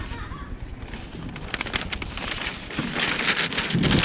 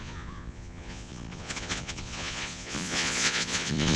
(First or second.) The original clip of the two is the first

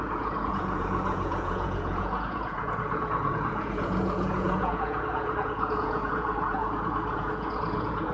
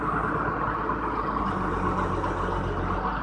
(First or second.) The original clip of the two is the second